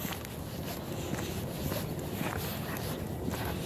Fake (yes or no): no